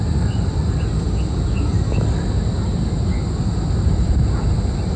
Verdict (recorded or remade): recorded